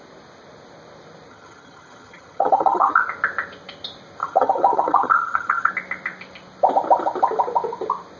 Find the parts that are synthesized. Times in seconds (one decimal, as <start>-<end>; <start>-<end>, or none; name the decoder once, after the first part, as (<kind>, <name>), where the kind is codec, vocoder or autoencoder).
1.3-2.9 (vocoder, HiFi-GAN); 4.2-5.7